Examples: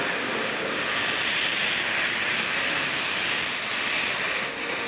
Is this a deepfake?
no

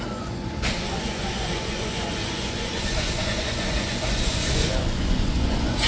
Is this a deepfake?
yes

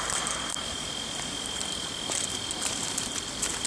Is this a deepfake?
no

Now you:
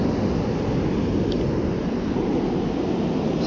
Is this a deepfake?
no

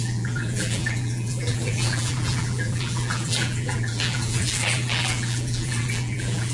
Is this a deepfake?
yes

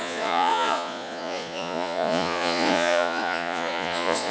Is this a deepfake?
yes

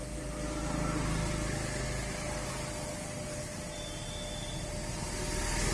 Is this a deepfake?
no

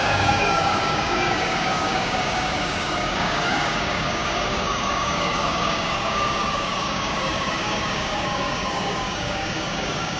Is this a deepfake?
yes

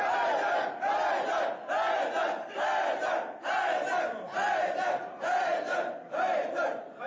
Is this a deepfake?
no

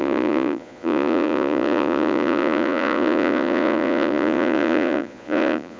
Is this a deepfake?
yes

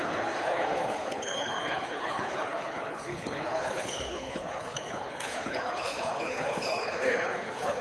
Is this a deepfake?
yes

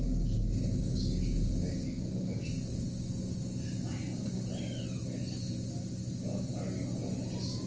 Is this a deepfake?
no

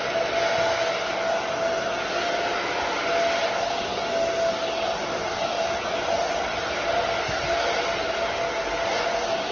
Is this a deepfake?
no